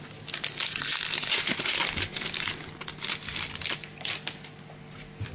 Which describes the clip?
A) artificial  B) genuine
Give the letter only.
B